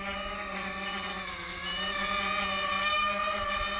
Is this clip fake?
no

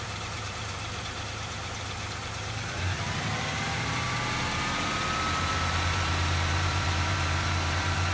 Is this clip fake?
yes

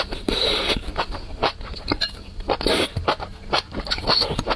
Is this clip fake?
yes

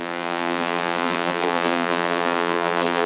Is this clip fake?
yes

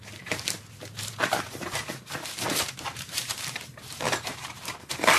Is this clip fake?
yes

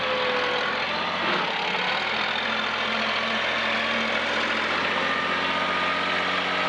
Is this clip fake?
no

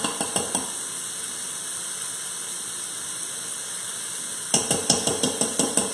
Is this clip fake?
no